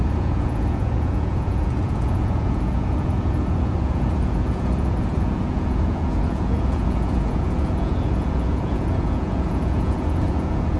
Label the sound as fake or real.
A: fake